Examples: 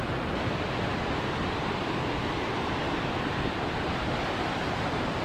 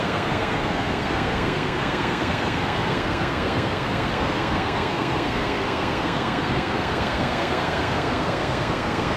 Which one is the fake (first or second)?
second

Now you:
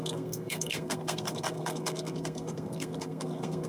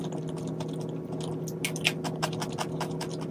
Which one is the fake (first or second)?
first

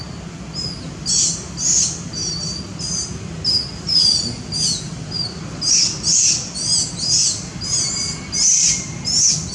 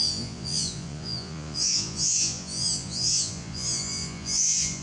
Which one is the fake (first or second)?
second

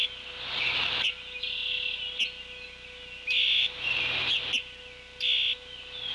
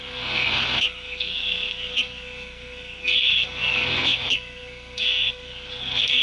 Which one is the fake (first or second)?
second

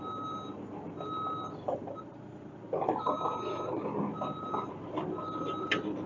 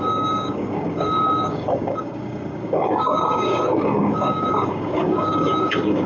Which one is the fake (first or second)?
second